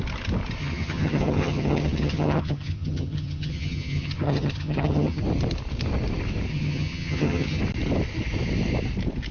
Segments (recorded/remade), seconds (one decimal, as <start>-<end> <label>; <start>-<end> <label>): 0.0-0.6 recorded; 0.6-5.2 remade; 5.2-6.5 recorded; 6.5-7.6 remade; 7.6-9.3 recorded